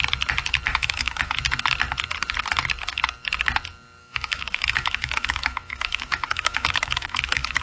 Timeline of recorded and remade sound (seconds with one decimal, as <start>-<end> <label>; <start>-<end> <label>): 0.0-0.7 recorded; 0.7-1.4 remade; 1.4-4.0 recorded; 4.0-7.6 remade